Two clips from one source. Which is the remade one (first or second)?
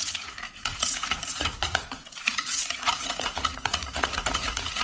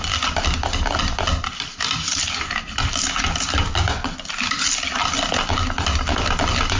first